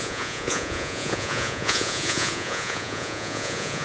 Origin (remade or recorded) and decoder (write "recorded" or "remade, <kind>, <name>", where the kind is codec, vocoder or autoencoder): remade, vocoder, Vocos